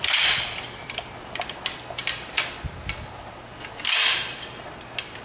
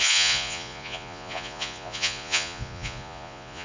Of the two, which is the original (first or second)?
first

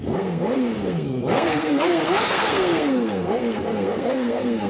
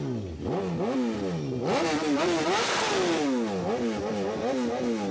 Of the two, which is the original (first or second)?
second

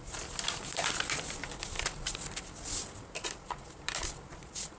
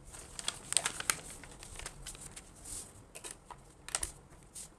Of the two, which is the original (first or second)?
second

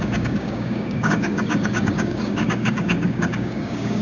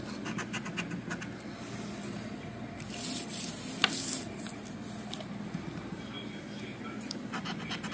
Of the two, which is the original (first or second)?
second